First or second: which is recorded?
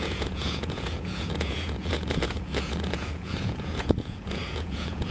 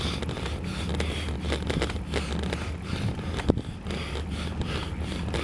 second